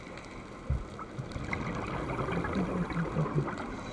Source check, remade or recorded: recorded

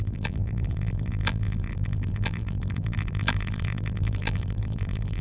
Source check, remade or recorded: remade